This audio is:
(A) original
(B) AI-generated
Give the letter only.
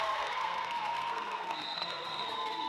B